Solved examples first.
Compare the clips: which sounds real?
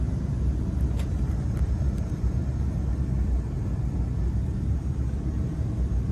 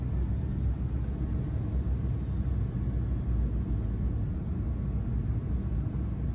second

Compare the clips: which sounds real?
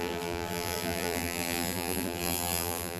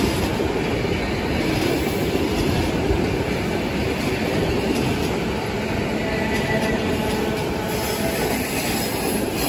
second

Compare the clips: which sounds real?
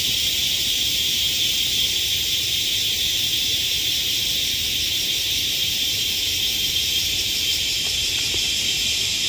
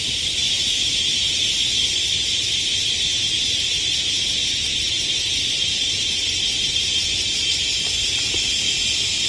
second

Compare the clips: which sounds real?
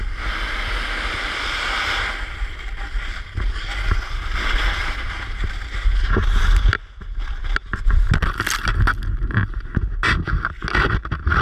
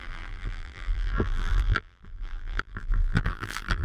first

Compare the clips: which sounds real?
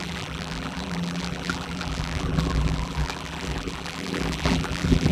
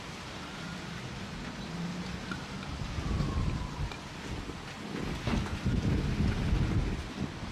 second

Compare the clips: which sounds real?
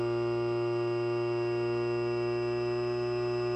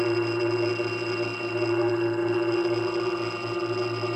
first